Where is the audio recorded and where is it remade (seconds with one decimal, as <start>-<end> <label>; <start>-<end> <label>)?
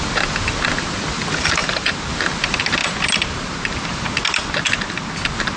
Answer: 0.0-5.6 recorded